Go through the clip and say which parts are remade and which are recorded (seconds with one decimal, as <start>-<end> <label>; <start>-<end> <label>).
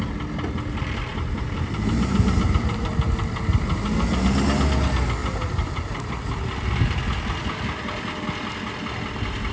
0.0-1.1 recorded; 1.1-2.9 remade; 2.9-5.2 recorded; 5.2-6.1 remade; 6.1-9.5 recorded